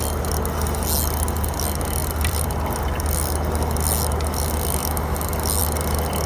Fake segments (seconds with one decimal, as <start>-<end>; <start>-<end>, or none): 2.0-2.8